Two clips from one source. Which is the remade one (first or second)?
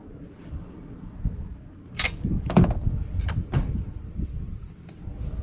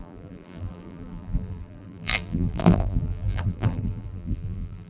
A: second